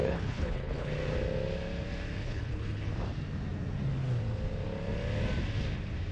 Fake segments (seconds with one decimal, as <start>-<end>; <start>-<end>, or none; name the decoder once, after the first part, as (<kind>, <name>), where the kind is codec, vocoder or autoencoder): 0.0-0.9 (codec, HILCodec); 2.2-2.9